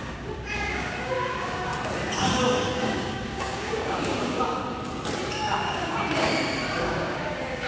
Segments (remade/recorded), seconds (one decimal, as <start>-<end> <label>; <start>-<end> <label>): 0.0-1.7 remade; 1.7-2.2 recorded; 2.2-4.6 remade; 4.6-5.3 recorded; 5.3-6.3 remade; 6.3-6.8 recorded; 6.8-7.7 remade